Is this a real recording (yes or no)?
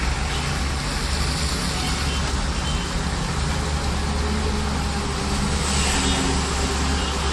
yes